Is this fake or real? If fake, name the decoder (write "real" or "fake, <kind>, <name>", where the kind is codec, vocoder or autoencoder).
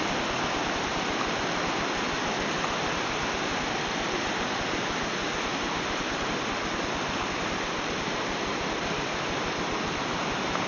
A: real